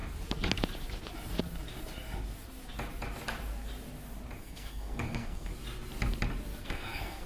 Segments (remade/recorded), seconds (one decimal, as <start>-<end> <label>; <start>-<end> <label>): 0.0-4.4 recorded; 4.4-5.5 remade; 5.5-6.6 recorded; 6.6-7.3 remade